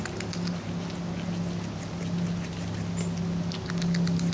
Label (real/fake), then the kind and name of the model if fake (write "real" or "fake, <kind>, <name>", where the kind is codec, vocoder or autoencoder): real